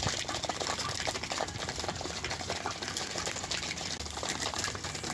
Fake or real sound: real